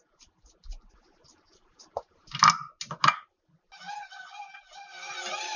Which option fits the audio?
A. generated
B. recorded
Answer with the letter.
B